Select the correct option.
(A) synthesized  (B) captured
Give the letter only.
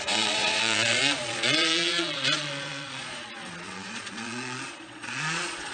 A